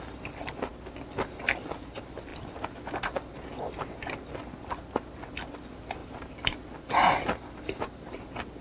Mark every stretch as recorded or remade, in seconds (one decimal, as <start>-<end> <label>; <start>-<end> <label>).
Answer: 0.0-8.6 recorded